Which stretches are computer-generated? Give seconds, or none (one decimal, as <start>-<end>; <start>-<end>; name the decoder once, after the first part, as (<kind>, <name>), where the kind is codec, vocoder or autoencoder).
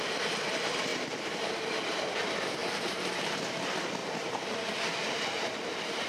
0.9-1.5 (vocoder, BigVGAN v2); 2.6-3.3